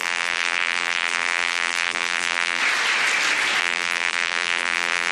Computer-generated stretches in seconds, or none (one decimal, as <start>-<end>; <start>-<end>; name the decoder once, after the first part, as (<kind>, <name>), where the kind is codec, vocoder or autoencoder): 0.0-2.6 (vocoder, BigVGAN v2); 3.6-5.1